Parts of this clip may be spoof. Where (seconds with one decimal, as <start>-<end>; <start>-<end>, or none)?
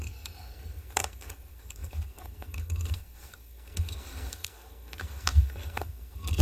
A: 0.0-6.4